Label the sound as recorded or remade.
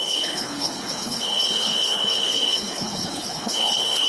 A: remade